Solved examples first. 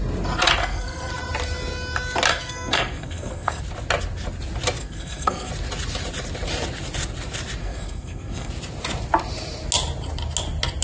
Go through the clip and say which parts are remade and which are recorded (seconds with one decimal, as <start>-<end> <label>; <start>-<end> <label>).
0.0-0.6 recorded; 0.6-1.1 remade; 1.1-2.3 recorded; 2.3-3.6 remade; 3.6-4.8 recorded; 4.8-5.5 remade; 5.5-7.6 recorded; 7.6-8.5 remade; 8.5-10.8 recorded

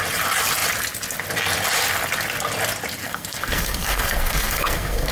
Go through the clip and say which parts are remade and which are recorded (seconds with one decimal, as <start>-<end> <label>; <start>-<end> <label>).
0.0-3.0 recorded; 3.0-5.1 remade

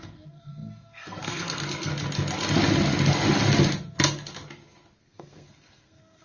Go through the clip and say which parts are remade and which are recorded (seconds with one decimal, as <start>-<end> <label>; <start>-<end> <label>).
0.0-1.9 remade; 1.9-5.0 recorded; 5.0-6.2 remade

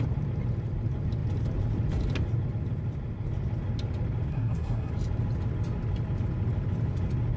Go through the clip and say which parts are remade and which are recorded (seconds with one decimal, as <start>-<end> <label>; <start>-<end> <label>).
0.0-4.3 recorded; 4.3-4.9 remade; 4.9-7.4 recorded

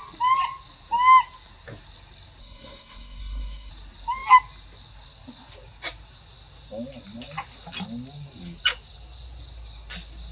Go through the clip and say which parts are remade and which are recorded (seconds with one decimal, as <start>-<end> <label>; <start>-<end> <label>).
0.0-2.4 recorded; 2.4-3.7 remade; 3.7-10.3 recorded